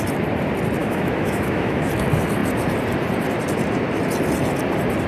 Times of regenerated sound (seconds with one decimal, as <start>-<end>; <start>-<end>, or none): 0.8-1.9